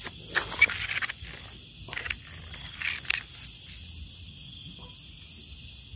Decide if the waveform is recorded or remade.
recorded